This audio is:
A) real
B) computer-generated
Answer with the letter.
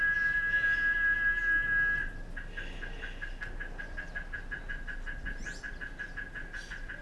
A